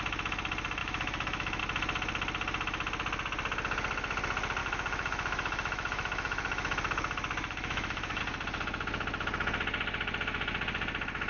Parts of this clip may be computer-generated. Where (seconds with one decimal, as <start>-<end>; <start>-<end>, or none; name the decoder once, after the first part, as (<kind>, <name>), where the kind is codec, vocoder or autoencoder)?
0.8-1.6 (autoencoder, DAC-VAE); 4.6-8.2